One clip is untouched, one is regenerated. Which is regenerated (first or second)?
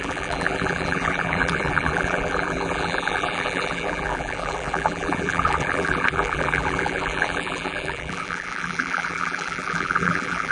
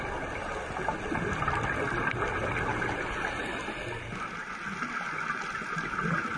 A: first